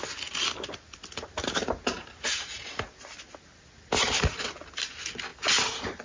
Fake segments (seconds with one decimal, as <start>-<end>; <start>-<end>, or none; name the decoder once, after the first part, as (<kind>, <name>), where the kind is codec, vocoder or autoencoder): none